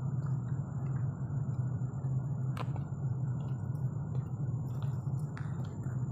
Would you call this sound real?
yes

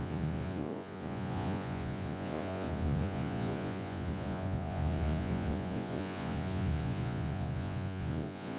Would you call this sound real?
no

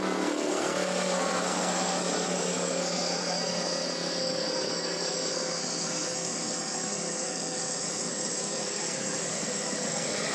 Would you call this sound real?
no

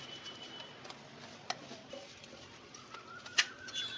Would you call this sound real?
yes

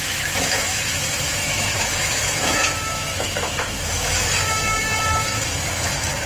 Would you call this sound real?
no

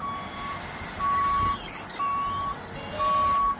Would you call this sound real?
yes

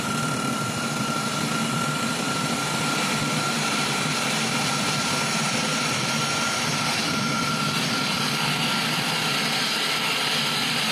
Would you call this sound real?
no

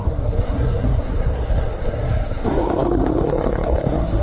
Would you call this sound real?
no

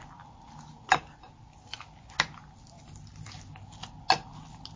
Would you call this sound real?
yes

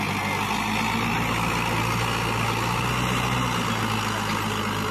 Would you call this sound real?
yes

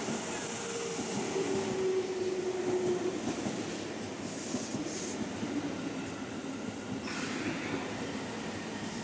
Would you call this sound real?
yes